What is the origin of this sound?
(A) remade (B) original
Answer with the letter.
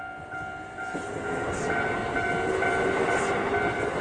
B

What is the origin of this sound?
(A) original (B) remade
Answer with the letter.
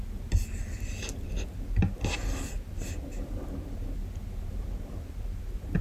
A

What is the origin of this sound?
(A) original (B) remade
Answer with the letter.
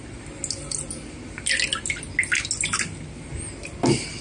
A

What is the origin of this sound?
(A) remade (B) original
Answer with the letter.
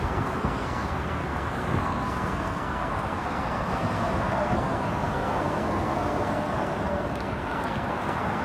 A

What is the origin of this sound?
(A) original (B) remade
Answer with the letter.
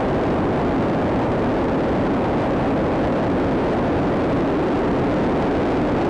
A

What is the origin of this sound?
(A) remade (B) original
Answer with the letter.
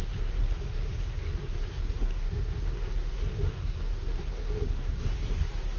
A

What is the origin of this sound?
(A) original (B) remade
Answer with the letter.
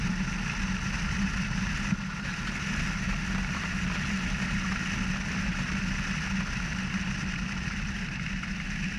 A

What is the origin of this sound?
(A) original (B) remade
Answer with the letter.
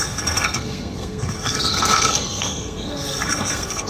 B